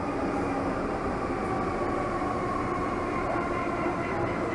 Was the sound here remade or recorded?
recorded